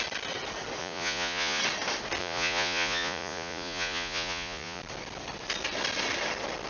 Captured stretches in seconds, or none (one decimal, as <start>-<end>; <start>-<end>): 0.0-0.8; 1.6-2.2; 4.8-6.7